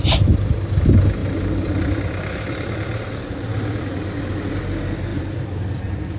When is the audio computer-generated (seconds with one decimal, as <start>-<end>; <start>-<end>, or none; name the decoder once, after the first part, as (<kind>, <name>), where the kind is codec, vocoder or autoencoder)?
1.2-4.6 (vocoder, BigVGAN v2); 5.1-5.8

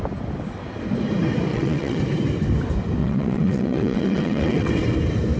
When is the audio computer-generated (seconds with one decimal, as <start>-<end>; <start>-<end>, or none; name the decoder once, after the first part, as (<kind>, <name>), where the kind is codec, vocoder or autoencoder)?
1.5-2.0 (vocoder, WaveNeXt); 3.0-4.7

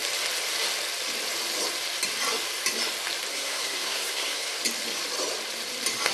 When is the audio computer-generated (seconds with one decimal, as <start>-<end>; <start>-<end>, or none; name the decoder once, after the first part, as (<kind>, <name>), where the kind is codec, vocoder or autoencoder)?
3.3-4.6 (codec, SNAC)

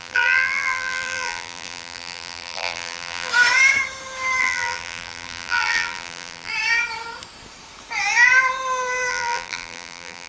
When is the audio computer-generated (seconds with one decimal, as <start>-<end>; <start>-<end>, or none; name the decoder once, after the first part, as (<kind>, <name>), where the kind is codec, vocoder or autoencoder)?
0.0-3.3 (vocoder, BigVGAN v2); 4.4-6.5; 9.1-10.3

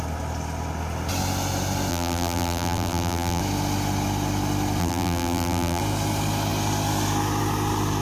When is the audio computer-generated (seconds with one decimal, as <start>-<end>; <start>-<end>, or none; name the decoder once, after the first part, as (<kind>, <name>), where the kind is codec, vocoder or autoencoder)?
1.9-3.4 (vocoder, BigVGAN v2); 4.8-5.8

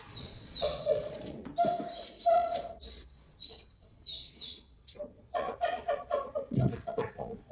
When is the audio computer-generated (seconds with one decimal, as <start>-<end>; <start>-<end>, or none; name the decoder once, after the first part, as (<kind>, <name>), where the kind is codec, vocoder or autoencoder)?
0.0-1.5 (vocoder, Vocos); 2.3-7.5

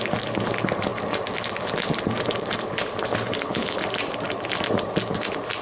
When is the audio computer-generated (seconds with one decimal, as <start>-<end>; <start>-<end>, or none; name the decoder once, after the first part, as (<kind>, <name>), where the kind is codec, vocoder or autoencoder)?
3.3-3.8 (codec, HILCodec)

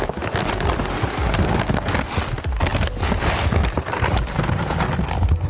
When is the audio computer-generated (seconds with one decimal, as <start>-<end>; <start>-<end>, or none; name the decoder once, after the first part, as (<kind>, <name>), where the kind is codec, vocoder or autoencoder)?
3.6-4.8 (vocoder, BigVGAN v2)